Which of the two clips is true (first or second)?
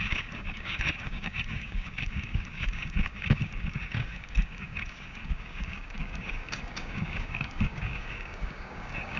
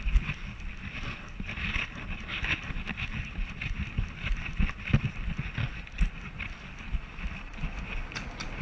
second